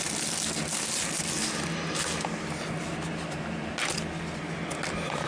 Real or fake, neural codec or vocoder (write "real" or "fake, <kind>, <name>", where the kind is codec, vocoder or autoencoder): real